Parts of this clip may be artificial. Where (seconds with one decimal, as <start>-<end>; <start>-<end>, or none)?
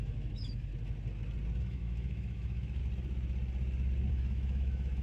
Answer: 0.0-0.7; 1.6-2.8; 4.1-5.0